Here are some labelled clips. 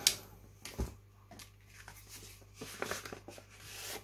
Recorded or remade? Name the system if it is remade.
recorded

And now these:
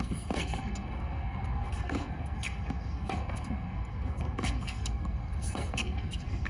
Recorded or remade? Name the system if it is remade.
remade, codec, SNAC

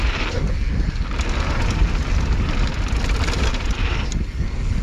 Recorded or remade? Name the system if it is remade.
recorded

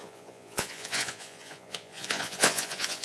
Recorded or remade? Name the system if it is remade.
remade, vocoder, Vocos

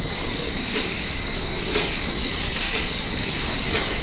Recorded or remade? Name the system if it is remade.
remade, codec, DAC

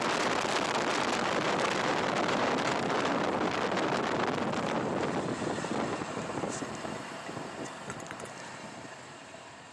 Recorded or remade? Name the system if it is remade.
recorded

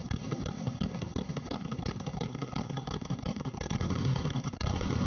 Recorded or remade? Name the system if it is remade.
remade, codec, SNAC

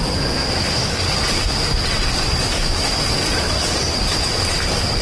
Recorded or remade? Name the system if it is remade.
recorded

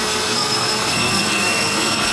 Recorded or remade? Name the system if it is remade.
remade, codec, SNAC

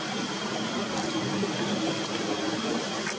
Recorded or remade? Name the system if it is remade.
recorded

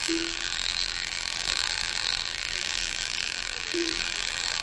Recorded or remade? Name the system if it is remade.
remade, vocoder, BigVGAN v2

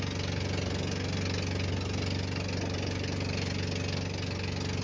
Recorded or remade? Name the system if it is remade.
recorded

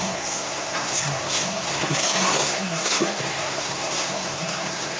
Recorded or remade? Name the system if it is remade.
remade, codec, SNAC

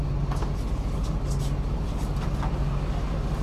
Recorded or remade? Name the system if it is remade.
recorded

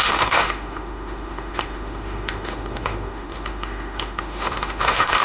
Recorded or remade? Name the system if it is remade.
remade, autoencoder, DAC-VAE